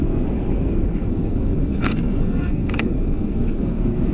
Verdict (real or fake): fake